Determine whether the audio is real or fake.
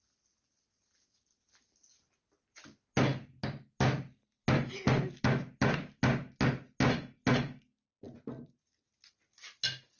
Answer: real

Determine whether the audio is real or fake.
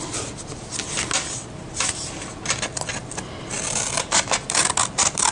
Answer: real